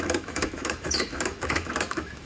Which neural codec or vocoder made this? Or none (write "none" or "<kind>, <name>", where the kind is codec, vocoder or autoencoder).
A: autoencoder, DAC-VAE